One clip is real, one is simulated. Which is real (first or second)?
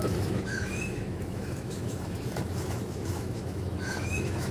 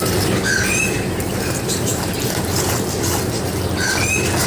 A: second